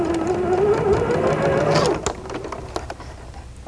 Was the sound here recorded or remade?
recorded